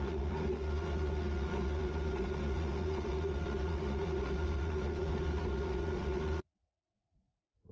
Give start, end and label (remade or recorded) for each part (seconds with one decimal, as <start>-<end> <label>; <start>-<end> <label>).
0.0-7.7 remade